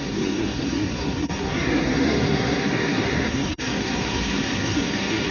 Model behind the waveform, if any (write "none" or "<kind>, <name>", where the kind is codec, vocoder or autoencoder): codec, SNAC